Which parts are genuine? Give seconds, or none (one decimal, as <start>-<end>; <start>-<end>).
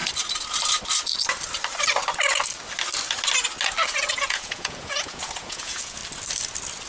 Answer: 0.0-4.1; 6.0-6.9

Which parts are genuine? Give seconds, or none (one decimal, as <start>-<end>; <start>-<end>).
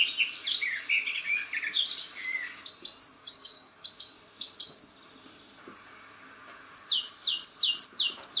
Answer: 0.0-3.2; 3.9-8.4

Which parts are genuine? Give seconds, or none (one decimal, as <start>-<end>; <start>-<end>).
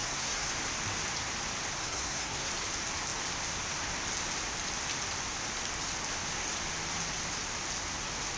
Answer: 0.5-1.8; 2.5-8.4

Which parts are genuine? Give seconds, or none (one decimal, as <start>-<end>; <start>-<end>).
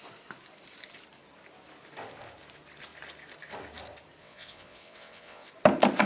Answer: 0.0-4.2; 5.5-6.1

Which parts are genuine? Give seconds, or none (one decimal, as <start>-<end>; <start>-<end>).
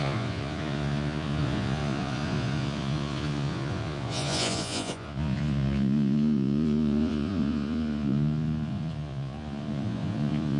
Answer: none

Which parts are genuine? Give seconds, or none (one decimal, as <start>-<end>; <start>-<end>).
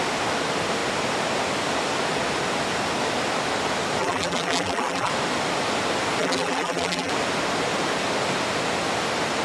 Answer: 0.0-4.0; 5.1-6.2; 7.1-9.4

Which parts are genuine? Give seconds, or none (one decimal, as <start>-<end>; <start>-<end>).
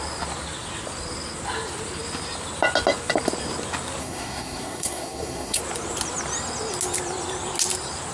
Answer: 0.0-4.0; 5.6-8.1